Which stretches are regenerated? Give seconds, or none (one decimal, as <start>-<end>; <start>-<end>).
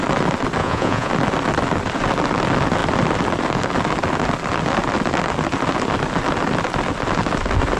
0.6-1.1